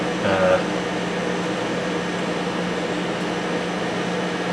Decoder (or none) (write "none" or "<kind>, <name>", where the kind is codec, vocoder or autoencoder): none